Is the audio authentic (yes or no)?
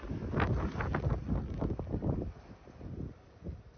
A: yes